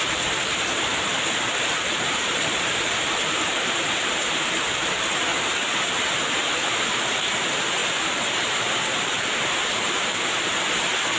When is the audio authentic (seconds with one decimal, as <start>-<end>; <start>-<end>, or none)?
5.3-6.4